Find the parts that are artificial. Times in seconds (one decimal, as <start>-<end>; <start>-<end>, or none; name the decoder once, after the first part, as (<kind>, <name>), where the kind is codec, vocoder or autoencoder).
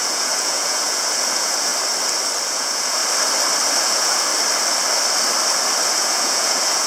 0.0-1.7 (vocoder, Vocos); 2.4-3.0; 3.8-4.3; 6.0-6.9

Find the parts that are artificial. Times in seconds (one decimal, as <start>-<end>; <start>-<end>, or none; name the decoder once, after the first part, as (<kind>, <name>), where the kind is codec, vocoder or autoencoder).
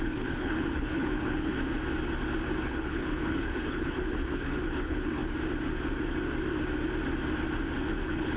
0.0-1.5 (codec, HILCodec); 2.6-5.2; 8.0-8.4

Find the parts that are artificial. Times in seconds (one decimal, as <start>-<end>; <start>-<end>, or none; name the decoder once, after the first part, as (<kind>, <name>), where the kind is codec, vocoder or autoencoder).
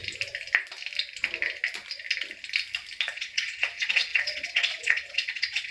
3.1-5.7 (vocoder, Vocos)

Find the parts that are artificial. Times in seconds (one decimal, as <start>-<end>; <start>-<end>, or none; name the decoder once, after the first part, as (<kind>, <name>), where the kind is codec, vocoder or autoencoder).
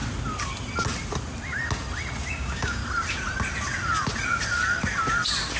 2.3-2.8 (codec, DAC)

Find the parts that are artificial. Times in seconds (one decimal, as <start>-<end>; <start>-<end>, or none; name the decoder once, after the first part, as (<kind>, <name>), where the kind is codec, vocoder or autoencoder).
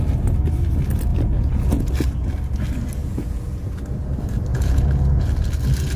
1.1-1.9 (vocoder, Vocos); 3.0-3.7; 4.5-5.3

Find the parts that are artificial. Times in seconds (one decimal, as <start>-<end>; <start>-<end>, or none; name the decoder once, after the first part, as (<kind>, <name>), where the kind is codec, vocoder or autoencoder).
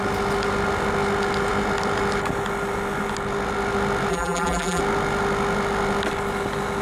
4.1-4.8 (vocoder, BigVGAN v2)